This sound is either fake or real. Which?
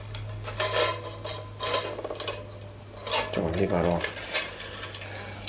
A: real